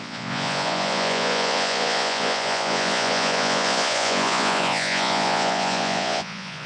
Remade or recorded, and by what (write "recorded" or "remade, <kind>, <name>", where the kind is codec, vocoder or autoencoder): remade, vocoder, Vocos